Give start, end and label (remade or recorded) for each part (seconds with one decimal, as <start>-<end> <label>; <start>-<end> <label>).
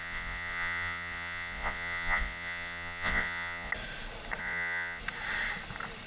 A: 0.0-3.7 remade; 3.7-4.4 recorded; 4.4-5.0 remade; 5.0-6.1 recorded